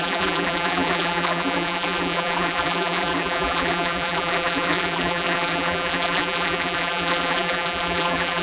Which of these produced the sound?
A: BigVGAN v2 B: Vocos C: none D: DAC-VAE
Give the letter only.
A